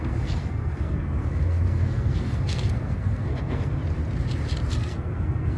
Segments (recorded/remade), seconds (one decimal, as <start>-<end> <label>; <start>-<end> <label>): 0.0-3.8 remade; 3.8-4.7 recorded; 4.7-5.6 remade